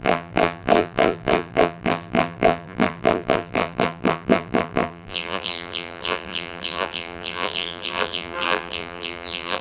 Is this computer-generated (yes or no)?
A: yes